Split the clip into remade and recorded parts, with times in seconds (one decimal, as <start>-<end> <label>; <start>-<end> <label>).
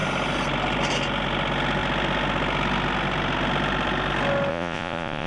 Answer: 0.0-4.5 recorded; 4.5-5.3 remade